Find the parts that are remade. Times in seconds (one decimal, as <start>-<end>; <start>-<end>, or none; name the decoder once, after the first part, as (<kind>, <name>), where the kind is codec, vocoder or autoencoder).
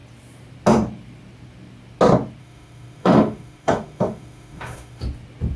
2.4-5.0 (autoencoder, DAC-VAE)